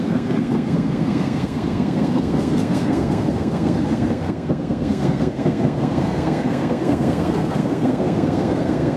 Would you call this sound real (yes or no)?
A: no